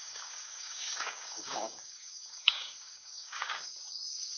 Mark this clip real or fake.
fake